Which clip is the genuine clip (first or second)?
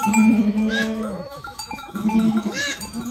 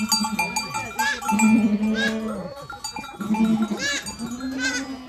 second